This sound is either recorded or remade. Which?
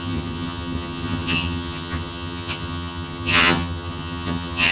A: remade